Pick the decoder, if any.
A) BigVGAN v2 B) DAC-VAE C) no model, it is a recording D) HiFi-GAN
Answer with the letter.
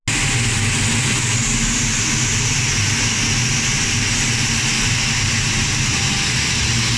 C